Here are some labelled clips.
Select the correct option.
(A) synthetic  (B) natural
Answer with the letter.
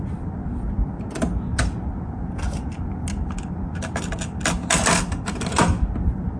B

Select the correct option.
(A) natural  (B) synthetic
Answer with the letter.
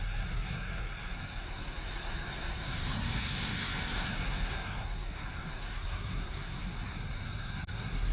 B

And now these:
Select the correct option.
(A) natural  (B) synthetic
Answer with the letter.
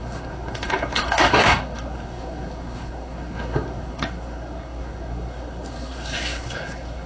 B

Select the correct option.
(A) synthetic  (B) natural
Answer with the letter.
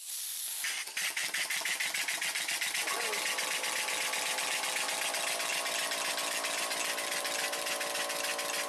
B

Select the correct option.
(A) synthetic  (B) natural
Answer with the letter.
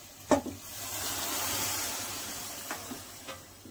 B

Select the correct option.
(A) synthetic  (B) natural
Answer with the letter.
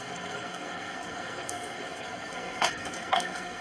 A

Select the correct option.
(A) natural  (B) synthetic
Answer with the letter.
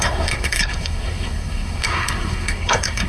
B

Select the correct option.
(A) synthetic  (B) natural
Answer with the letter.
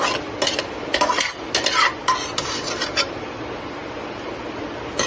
B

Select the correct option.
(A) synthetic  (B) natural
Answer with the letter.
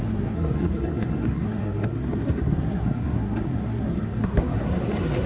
A